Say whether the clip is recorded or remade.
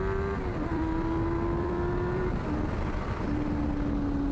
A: remade